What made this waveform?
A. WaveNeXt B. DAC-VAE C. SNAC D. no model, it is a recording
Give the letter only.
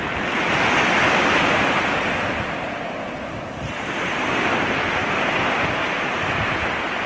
D